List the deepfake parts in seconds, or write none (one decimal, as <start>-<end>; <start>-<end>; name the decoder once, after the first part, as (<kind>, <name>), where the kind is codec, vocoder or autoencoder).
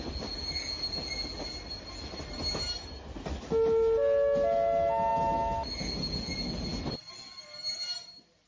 none